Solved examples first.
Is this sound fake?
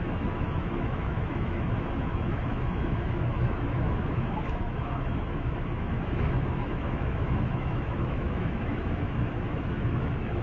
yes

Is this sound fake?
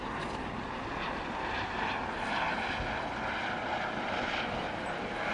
no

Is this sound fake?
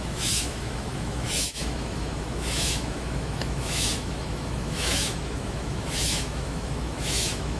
yes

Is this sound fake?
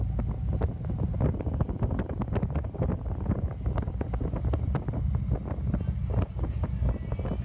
no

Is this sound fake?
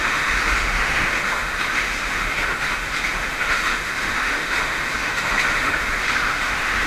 yes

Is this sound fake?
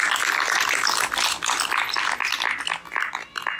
no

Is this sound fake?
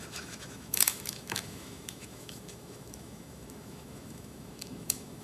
yes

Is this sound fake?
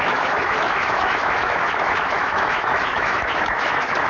yes